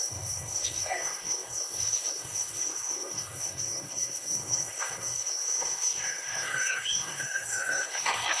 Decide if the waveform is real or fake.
fake